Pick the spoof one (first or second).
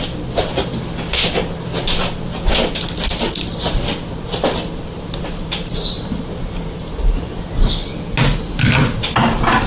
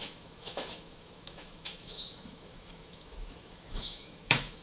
second